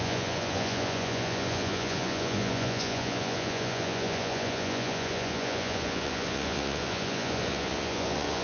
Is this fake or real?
fake